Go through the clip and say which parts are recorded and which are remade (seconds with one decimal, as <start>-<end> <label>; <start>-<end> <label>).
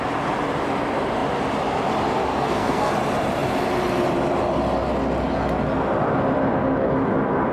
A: 0.0-2.3 recorded; 2.3-2.9 remade; 2.9-7.5 recorded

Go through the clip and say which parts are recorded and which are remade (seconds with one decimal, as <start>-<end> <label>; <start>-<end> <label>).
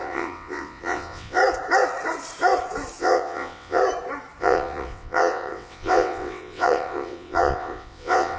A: 0.0-1.4 remade; 1.4-3.0 recorded; 3.0-3.8 remade; 3.8-4.4 recorded; 4.4-8.4 remade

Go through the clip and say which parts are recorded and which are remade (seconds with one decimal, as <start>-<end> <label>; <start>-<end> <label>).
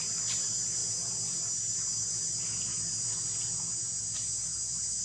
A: 0.0-5.0 recorded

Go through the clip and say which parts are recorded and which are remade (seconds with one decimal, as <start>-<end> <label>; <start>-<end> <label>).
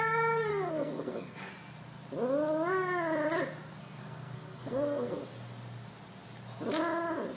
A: 0.0-0.5 recorded; 0.5-1.5 remade; 1.5-3.8 recorded; 3.8-5.2 remade; 5.2-7.4 recorded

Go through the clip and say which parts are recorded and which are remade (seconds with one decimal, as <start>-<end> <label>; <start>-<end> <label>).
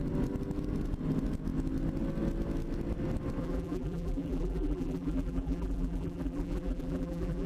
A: 0.0-3.4 recorded; 3.4-7.5 remade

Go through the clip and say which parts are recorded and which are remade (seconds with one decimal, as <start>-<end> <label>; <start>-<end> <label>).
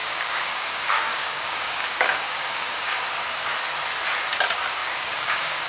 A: 0.0-3.1 remade; 3.1-4.8 recorded; 4.8-5.7 remade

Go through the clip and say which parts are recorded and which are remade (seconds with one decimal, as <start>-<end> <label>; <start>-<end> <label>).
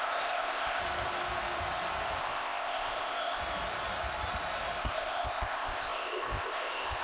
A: 0.0-0.8 remade; 0.8-2.2 recorded; 2.2-3.4 remade; 3.4-4.8 recorded; 4.8-7.0 remade